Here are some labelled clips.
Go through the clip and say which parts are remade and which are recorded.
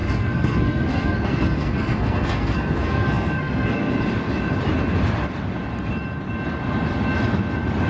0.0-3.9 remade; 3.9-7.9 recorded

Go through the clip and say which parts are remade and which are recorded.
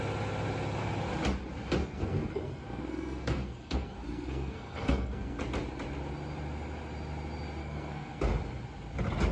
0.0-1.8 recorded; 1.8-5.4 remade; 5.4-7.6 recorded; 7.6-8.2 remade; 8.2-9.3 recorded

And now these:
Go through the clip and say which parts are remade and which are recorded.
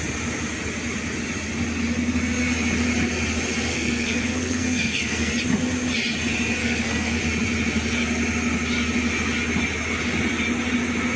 0.0-3.7 recorded; 3.7-5.3 remade; 5.3-6.6 recorded; 6.6-7.2 remade; 7.2-11.2 recorded